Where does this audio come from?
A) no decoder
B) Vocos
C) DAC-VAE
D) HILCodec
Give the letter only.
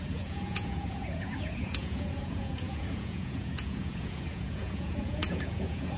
B